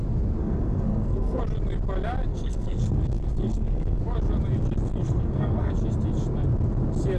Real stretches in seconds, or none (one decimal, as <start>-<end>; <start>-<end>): 0.0-0.4; 1.4-2.3; 4.0-4.9; 5.7-7.2